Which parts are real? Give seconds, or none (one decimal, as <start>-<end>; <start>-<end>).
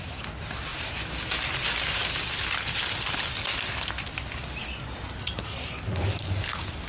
0.0-6.9